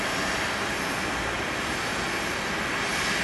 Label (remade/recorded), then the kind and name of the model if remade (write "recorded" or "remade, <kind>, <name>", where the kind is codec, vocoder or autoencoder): recorded